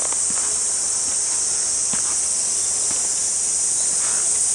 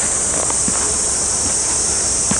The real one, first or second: first